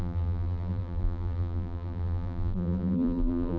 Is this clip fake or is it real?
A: fake